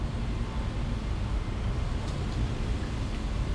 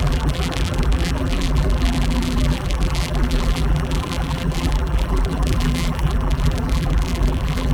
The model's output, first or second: second